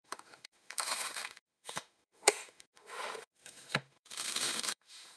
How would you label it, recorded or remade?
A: remade